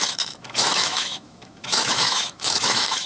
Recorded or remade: remade